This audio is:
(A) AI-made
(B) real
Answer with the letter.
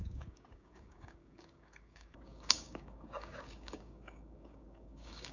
A